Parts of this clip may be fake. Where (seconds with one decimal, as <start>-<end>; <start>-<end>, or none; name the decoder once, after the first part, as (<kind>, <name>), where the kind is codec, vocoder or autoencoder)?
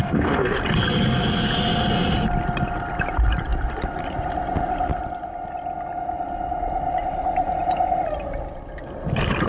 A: 0.0-0.6 (codec, DAC)